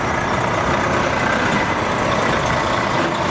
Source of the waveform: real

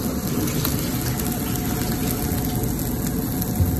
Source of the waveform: real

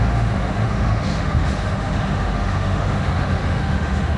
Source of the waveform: fake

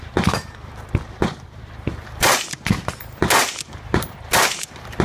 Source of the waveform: fake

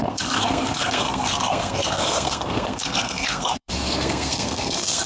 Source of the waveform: fake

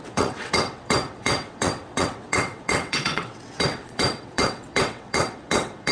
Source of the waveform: fake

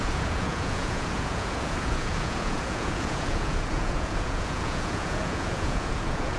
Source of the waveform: fake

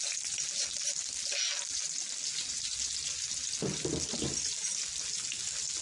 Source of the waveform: real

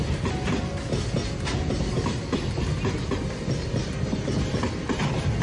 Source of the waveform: real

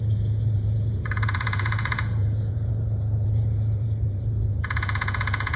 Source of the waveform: fake